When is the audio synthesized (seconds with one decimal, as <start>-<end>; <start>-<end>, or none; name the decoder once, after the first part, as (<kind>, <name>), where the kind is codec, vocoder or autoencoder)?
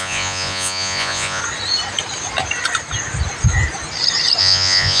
0.0-1.4 (vocoder, Vocos); 4.4-5.0